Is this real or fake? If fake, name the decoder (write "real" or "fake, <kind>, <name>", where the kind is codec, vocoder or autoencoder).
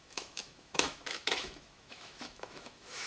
fake, autoencoder, DAC-VAE